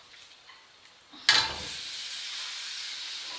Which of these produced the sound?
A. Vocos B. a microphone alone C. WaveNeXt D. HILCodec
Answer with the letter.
B